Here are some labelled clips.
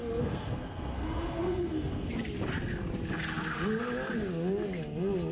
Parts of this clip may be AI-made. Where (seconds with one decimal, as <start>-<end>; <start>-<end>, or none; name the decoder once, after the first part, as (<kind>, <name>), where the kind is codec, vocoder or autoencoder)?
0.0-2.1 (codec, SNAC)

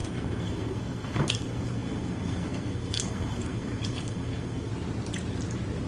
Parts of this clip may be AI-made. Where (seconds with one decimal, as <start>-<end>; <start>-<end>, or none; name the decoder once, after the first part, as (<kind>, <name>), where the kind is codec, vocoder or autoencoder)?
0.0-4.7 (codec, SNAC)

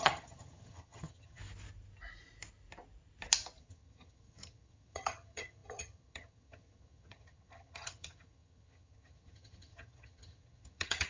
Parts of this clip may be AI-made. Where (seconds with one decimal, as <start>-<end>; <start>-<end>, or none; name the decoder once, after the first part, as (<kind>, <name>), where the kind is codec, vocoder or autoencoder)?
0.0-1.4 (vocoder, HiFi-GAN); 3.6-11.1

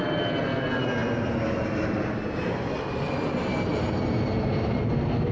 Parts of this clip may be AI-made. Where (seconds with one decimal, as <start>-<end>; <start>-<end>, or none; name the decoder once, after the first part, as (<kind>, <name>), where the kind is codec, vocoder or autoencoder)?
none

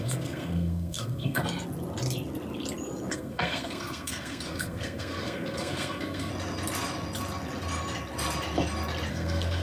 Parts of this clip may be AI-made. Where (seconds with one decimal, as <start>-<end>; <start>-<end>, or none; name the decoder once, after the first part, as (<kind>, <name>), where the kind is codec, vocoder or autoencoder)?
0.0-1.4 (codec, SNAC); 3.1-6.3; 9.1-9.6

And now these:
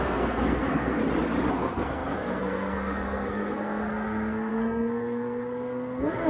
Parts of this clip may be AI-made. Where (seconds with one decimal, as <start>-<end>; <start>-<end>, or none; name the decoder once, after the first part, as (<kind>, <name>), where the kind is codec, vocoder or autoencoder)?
0.0-1.0 (codec, SNAC); 1.5-6.3

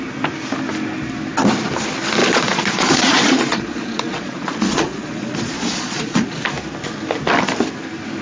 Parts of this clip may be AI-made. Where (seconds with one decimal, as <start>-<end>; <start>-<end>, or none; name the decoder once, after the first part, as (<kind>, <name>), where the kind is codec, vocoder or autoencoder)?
2.2-6.4 (vocoder, Vocos)

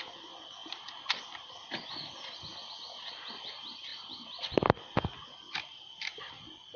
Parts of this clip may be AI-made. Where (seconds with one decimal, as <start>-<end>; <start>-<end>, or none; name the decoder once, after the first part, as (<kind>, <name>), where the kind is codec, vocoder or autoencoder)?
none